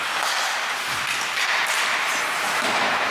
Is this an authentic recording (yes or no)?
yes